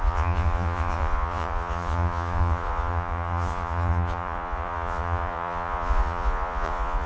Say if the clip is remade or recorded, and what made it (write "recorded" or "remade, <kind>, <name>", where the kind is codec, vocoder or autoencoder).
remade, vocoder, Vocos